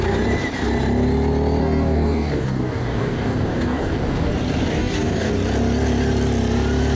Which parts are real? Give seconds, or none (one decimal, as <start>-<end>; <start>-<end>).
0.0-1.6; 4.3-4.7; 5.3-7.0